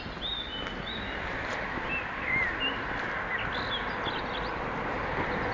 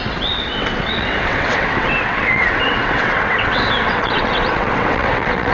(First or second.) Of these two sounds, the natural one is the first